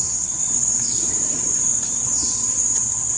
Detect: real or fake fake